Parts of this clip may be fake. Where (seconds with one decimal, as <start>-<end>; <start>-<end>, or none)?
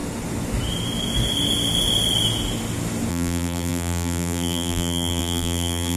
3.1-6.0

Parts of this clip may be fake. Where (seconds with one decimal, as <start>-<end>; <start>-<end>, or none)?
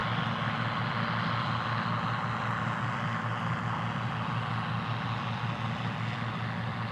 none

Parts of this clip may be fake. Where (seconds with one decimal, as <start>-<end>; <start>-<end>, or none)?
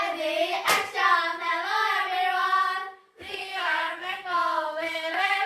3.0-5.5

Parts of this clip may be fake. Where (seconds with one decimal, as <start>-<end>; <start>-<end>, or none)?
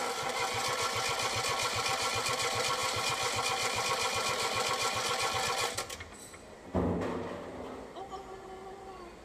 none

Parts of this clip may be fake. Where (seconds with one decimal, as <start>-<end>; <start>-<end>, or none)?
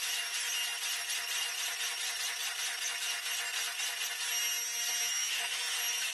5.1-5.6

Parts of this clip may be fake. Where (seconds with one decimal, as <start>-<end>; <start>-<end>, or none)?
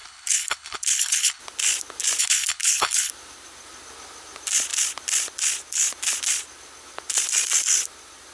0.0-1.4; 2.2-3.1